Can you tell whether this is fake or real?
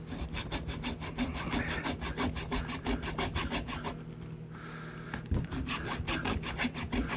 real